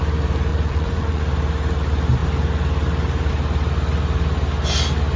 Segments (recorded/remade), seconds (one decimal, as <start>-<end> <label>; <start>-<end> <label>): 0.0-0.5 recorded; 0.5-1.2 remade; 1.2-5.2 recorded